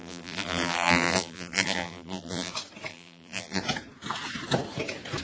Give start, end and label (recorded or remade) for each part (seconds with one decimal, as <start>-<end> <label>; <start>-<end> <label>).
0.0-2.5 remade; 2.5-2.9 recorded; 2.9-3.6 remade; 3.6-5.2 recorded